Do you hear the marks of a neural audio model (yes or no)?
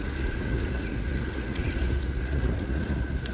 yes